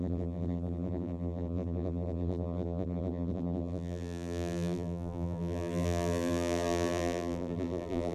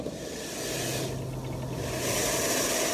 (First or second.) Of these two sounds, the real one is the second